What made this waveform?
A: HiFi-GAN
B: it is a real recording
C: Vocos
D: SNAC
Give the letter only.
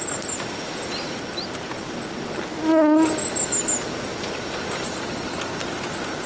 B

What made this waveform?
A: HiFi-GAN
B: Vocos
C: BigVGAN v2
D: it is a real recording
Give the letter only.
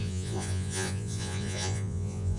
B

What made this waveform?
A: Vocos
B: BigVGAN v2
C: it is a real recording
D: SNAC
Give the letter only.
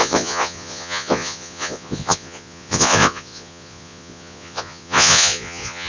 A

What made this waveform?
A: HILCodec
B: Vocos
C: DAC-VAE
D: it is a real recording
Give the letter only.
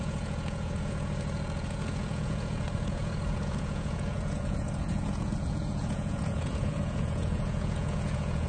B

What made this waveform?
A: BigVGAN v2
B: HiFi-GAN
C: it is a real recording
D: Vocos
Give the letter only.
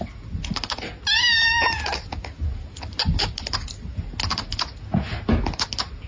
C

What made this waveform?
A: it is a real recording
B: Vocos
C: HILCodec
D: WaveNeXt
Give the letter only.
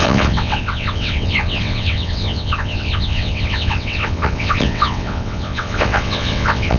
D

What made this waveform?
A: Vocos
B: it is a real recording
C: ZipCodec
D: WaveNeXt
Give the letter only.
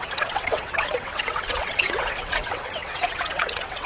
D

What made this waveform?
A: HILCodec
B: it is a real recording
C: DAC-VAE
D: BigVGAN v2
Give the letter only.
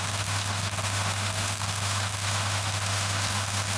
C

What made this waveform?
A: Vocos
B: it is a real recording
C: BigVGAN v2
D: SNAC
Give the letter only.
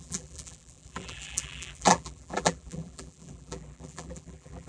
C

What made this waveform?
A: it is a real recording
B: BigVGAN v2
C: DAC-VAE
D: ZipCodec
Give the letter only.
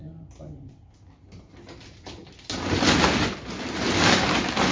A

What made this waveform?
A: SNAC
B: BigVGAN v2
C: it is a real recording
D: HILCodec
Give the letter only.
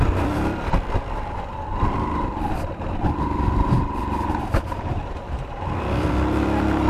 B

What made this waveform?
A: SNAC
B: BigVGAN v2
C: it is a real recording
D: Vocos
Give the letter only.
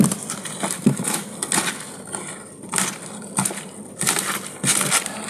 C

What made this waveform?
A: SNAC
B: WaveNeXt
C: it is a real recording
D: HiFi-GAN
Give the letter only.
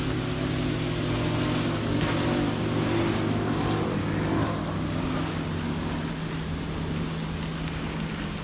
C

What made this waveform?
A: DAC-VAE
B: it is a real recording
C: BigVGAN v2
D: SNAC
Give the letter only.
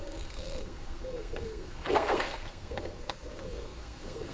D